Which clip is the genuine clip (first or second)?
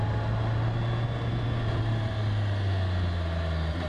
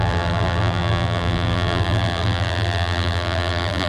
first